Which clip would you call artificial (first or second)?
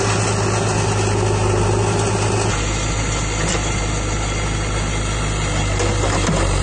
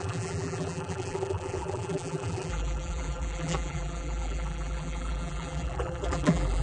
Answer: second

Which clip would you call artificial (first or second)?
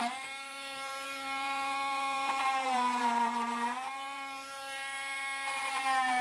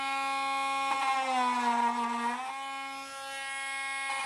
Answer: first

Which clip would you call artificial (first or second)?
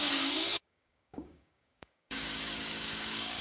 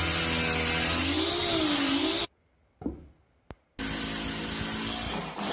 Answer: first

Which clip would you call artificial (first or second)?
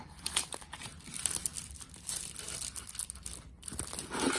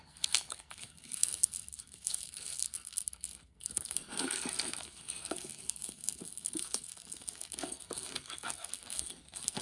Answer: second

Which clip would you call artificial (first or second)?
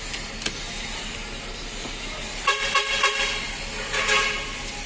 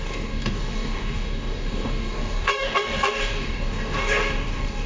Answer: second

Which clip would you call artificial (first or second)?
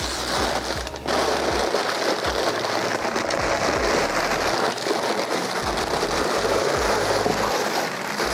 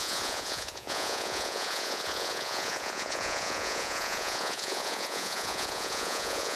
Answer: second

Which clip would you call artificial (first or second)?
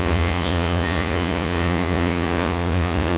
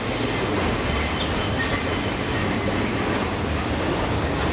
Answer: first